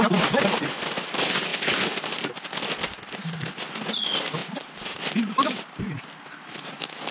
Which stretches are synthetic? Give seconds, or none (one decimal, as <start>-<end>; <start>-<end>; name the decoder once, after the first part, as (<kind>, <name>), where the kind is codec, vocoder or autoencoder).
1.5-2.7 (vocoder, BigVGAN v2)